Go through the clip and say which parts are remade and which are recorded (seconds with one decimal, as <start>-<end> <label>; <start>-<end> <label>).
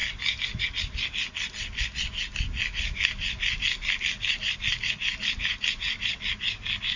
0.0-7.0 recorded